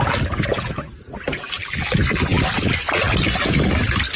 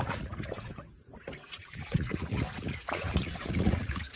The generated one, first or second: second